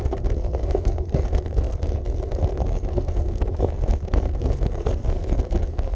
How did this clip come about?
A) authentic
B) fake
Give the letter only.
B